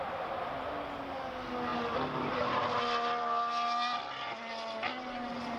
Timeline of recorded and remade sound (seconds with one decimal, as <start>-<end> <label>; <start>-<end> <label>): 0.0-5.6 recorded